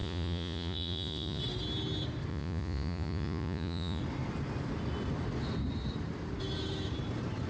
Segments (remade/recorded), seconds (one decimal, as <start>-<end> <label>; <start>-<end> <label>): 0.0-1.4 remade; 1.4-2.3 recorded; 2.3-4.0 remade; 4.0-7.5 recorded

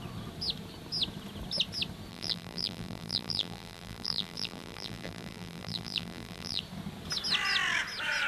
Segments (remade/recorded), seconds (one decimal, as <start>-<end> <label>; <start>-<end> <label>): 0.0-2.1 recorded; 2.1-6.6 remade; 6.6-8.3 recorded

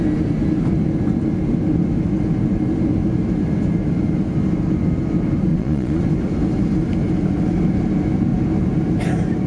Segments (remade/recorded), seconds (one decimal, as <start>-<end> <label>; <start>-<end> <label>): 0.0-5.5 recorded; 5.5-6.0 remade; 6.0-9.5 recorded

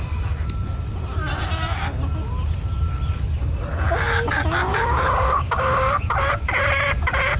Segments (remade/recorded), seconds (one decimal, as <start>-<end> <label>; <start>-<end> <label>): 0.0-4.7 recorded; 4.7-6.5 remade; 6.5-7.4 recorded

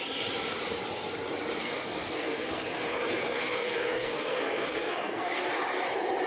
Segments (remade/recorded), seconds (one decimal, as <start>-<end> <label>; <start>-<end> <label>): 0.0-1.6 recorded; 1.6-5.4 remade; 5.4-6.3 recorded

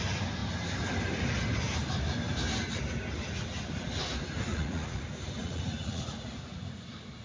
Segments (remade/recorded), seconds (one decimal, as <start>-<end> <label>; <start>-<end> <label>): 0.0-4.5 recorded; 4.5-5.0 remade; 5.0-5.4 recorded; 5.4-6.8 remade; 6.8-7.2 recorded

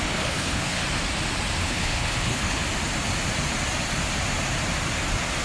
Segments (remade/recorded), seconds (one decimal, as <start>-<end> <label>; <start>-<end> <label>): 0.0-0.8 remade; 0.8-1.6 recorded; 1.6-2.6 remade; 2.6-5.4 recorded

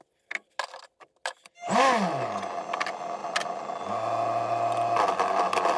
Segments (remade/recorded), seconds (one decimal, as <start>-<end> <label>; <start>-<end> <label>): 0.0-5.8 recorded